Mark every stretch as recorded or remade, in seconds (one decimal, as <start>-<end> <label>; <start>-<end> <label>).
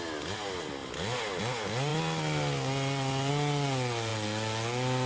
0.0-5.1 recorded